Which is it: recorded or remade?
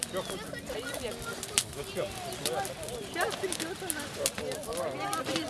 recorded